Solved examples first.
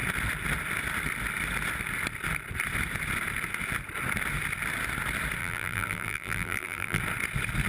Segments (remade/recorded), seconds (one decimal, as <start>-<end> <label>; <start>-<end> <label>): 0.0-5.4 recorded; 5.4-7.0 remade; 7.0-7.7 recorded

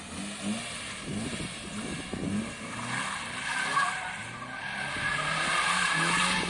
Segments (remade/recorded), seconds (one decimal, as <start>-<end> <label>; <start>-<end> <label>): 0.0-5.4 recorded; 5.4-5.9 remade; 5.9-6.5 recorded

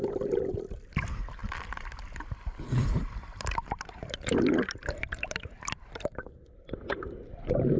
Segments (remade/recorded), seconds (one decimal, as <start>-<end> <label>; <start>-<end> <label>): 0.0-7.8 remade

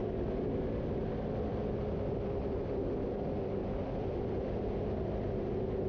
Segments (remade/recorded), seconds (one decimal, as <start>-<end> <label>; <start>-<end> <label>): 0.0-5.9 recorded

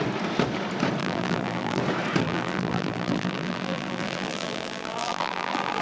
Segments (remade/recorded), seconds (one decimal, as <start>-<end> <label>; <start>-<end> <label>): 0.0-1.0 recorded; 1.0-1.8 remade; 1.8-2.2 recorded; 2.2-5.8 remade